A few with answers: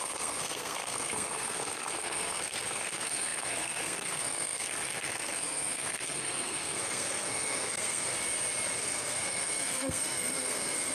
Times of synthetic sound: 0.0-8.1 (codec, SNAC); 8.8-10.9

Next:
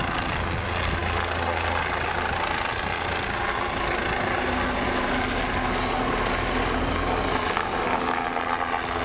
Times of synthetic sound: none

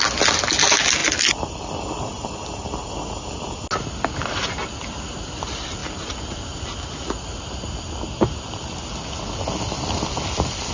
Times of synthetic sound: none

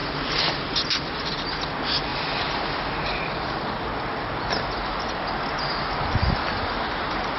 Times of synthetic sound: none

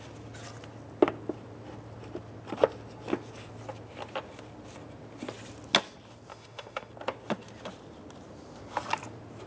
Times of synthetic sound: 6.3-6.9 (autoencoder, DAC-VAE)

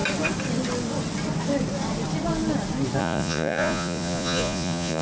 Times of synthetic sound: 3.0-5.0 (vocoder, Vocos)

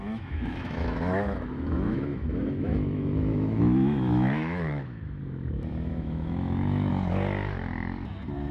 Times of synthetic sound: 0.0-6.9 (autoencoder, DAC-VAE)

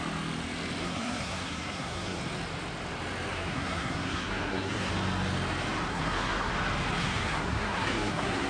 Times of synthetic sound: 0.8-2.2 (codec, SNAC); 3.3-4.9; 5.9-6.5; 7.0-8.5